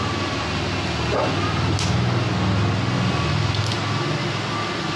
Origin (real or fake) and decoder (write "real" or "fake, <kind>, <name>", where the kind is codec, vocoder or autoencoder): real